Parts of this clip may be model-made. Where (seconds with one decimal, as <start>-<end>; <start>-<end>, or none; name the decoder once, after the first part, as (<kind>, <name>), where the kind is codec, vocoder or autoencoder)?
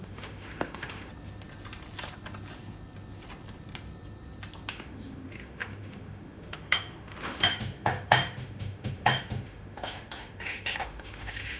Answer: 0.0-1.1 (autoencoder, DAC-VAE); 4.7-11.6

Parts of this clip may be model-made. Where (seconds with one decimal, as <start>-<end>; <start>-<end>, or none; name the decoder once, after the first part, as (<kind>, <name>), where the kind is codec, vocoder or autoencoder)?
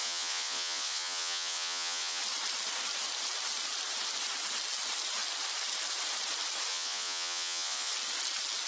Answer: 0.0-2.2 (vocoder, Vocos); 6.7-7.9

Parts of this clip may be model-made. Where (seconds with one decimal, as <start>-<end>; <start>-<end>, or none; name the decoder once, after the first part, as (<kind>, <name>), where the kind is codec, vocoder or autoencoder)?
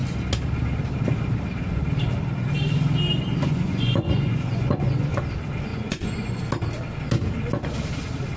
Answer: 3.4-5.2 (vocoder, Vocos); 5.7-6.4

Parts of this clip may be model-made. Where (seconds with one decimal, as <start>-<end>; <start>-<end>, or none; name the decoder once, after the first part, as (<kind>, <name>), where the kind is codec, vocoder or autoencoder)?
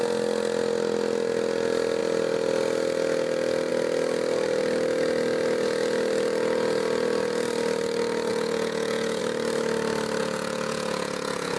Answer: 8.3-9.2 (vocoder, Vocos); 10.2-11.6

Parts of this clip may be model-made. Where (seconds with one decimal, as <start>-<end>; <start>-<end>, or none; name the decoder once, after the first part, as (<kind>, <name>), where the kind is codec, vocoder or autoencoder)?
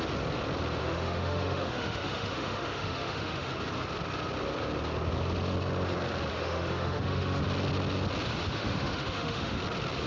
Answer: 0.8-3.5 (autoencoder, DAC-VAE); 6.3-7.4; 8.3-9.6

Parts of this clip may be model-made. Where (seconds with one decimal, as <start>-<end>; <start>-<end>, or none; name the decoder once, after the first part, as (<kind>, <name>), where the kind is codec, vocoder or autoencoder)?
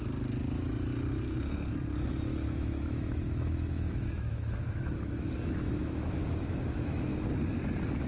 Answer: 2.3-7.1 (autoencoder, DAC-VAE)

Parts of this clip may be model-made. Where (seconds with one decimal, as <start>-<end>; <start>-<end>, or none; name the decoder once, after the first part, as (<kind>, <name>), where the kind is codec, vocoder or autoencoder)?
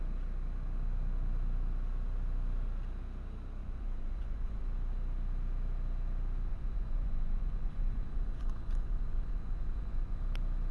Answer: 3.6-4.6 (vocoder, Vocos); 6.5-10.2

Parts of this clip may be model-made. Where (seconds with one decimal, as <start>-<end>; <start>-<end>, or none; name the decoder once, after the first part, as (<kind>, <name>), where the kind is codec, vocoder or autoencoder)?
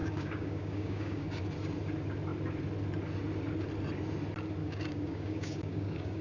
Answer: 0.0-1.4 (codec, DAC); 4.6-6.2